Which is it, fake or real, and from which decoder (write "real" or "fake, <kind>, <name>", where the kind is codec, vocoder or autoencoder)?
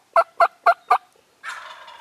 real